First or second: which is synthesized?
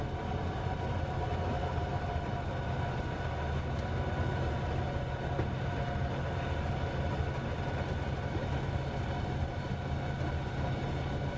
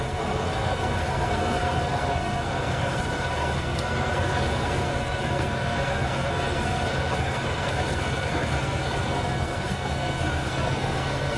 second